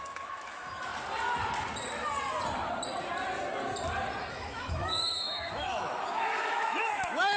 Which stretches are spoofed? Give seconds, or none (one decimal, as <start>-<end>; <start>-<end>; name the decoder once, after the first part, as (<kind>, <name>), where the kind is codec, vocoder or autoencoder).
0.0-0.9 (autoencoder, DAC-VAE); 4.3-7.4